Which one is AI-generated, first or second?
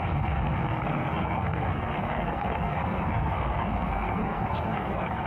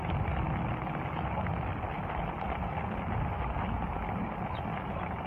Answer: first